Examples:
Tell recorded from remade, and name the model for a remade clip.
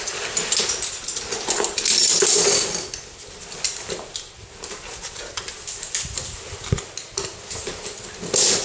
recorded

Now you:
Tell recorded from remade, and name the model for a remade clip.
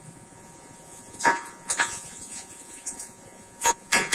remade, vocoder, Vocos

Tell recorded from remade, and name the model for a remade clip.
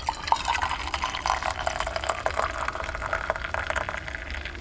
recorded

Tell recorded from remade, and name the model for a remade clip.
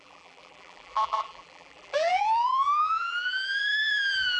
remade, vocoder, BigVGAN v2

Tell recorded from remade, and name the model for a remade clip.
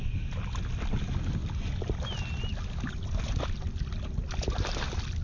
recorded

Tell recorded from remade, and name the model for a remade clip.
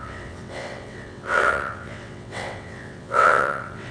remade, vocoder, WaveNeXt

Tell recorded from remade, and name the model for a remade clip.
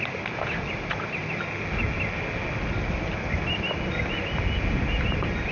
recorded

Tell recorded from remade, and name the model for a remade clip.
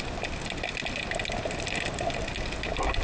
recorded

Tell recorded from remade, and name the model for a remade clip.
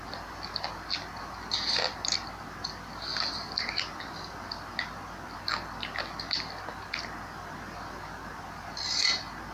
recorded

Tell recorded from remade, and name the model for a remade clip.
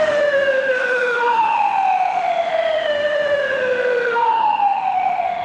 remade, autoencoder, DAC-VAE